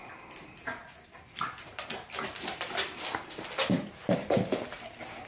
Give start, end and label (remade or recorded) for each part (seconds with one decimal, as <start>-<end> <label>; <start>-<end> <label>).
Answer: 0.0-5.3 recorded